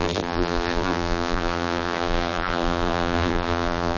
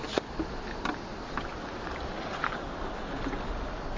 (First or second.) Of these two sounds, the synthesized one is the first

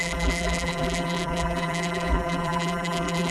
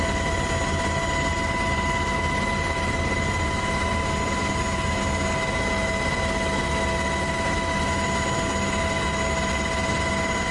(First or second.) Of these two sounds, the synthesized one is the first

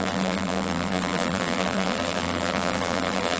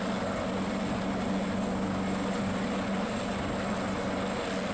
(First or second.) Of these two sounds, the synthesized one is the first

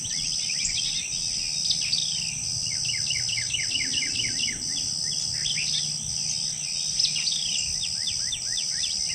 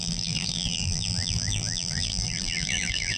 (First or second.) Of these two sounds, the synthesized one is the second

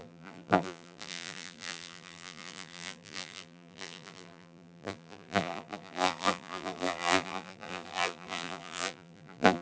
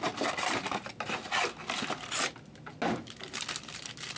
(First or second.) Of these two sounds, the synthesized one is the first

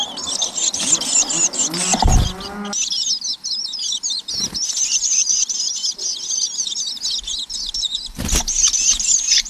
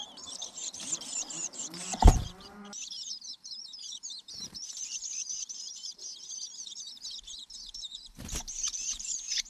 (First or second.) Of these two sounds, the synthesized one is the second